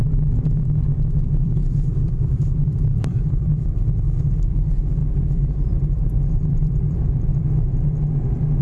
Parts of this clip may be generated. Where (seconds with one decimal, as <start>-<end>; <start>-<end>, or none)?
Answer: 0.0-7.3